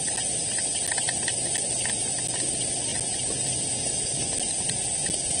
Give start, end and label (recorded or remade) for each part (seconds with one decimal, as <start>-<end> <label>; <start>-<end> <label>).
0.0-5.4 recorded